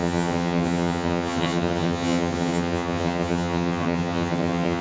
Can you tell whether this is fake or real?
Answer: fake